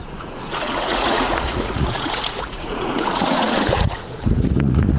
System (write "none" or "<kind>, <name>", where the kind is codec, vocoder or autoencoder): vocoder, Vocos